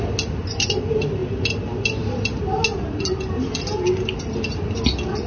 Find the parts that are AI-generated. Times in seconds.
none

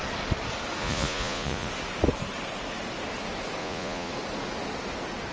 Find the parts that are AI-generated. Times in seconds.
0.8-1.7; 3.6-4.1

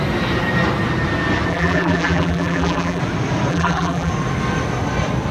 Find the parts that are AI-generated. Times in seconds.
1.5-3.0; 3.5-4.1

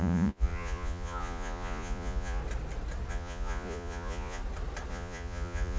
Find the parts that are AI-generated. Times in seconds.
0.0-2.4; 3.1-4.4; 4.9-5.8